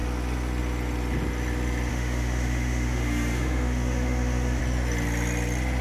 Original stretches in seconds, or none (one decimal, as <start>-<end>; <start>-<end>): 0.0-1.9; 4.6-5.8